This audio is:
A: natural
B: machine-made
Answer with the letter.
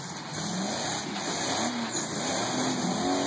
A